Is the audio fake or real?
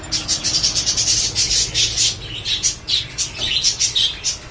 real